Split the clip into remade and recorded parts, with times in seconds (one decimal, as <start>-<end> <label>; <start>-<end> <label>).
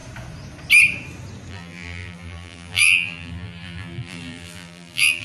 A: 0.0-1.5 recorded; 1.5-5.2 remade